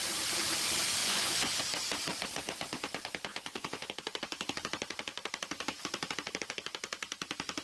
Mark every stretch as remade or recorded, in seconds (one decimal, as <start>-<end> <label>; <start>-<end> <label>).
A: 0.0-1.0 recorded; 1.0-1.6 remade; 1.6-3.3 recorded; 3.3-3.9 remade; 3.9-7.6 recorded